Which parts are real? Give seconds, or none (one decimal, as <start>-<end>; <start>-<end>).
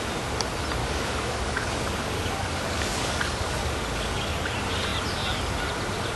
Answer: 0.0-0.8; 4.5-6.2